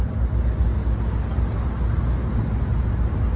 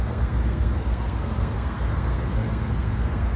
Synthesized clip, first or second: second